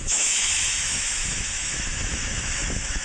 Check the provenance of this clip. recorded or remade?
remade